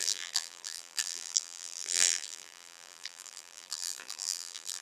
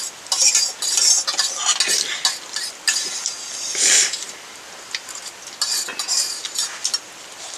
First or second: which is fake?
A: first